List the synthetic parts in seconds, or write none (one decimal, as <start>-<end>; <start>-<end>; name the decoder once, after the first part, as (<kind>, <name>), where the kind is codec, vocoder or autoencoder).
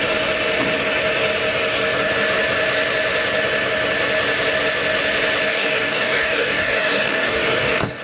5.5-8.0 (codec, DAC)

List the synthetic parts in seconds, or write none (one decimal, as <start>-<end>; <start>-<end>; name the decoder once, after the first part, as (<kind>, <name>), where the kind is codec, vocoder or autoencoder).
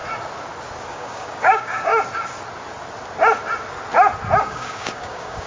0.9-1.9 (codec, DAC); 4.4-5.5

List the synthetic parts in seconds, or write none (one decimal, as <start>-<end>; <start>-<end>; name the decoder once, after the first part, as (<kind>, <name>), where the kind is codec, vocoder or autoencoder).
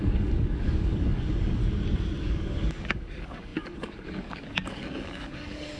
0.0-1.6 (codec, DAC); 2.2-5.8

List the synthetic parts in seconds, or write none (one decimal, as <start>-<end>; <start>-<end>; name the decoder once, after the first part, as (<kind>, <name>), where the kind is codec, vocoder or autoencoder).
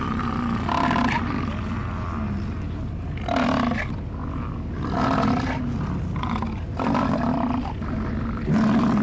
none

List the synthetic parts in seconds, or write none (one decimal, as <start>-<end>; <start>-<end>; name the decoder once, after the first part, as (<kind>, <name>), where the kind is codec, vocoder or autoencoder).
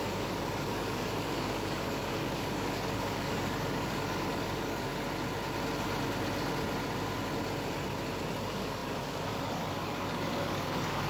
0.0-4.9 (codec, DAC); 8.4-11.1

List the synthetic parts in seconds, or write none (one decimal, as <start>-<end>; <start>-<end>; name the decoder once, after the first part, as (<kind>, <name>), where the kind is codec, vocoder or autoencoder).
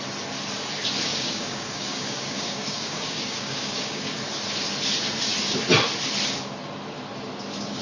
1.1-4.1 (codec, DAC)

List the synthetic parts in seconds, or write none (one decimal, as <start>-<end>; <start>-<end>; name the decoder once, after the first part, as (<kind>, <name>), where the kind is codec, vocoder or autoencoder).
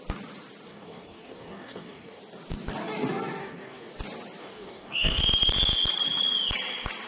0.7-2.2 (codec, DAC); 3.4-3.9; 4.4-5.2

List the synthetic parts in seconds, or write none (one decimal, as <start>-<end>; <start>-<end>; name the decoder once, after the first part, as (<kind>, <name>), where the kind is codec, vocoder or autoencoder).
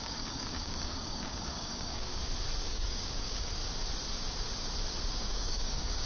0.0-2.1 (codec, DAC); 2.6-3.6; 5.1-6.1